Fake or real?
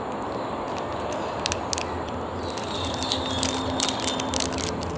real